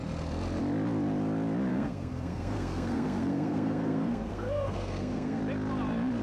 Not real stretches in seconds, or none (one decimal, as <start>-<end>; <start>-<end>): 1.7-5.4

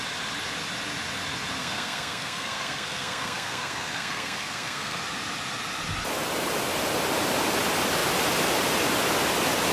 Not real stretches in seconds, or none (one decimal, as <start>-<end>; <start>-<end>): 1.6-5.0

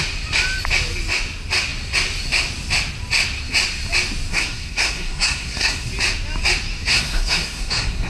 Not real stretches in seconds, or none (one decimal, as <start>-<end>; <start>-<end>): 4.3-5.9; 6.9-8.1

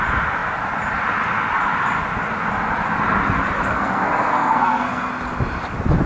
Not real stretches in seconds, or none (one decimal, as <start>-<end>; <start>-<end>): 3.7-5.1

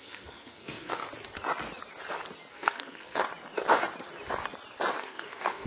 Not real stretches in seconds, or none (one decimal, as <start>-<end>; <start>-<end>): 0.0-1.0; 2.5-3.2; 5.0-5.7

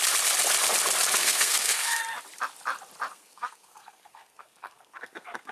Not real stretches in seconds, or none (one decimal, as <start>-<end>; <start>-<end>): 1.2-2.0; 3.1-5.5